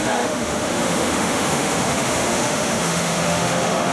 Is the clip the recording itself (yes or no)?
no